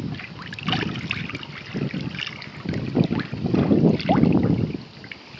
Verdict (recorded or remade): recorded